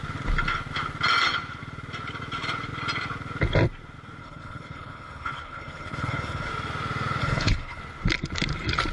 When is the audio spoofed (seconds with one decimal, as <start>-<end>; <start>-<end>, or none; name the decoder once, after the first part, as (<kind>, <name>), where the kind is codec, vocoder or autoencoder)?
4.2-6.5 (codec, HILCodec); 7.2-7.8